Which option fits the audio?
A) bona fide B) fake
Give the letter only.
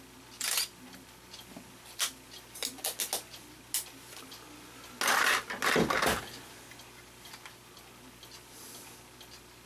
A